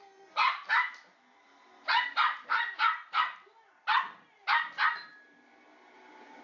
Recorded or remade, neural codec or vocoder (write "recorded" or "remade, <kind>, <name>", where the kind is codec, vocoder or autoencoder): recorded